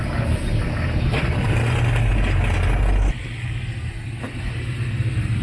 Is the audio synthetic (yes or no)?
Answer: no